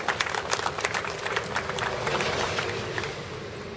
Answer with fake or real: real